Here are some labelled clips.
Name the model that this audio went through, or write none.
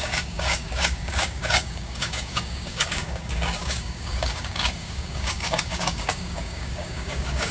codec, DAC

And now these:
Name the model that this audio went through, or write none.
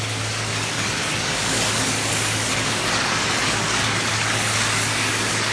codec, DAC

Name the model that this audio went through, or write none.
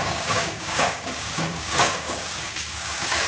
codec, DAC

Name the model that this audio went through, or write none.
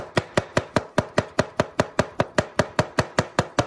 none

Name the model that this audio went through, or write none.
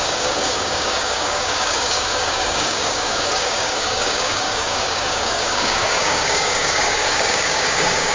codec, DAC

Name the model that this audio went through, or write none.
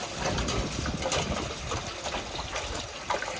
none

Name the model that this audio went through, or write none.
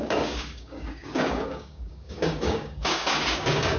codec, DAC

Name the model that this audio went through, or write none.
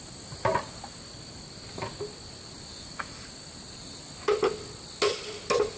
none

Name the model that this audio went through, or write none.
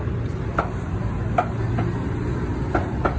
none